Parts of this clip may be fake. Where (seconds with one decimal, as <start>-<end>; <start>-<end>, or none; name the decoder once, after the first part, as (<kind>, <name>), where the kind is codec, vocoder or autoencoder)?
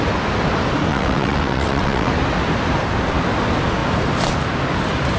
0.9-2.1 (vocoder, WaveNeXt)